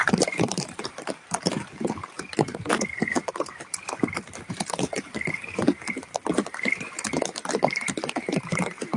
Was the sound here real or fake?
fake